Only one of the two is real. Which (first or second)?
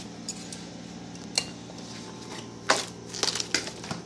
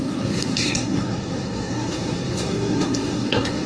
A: first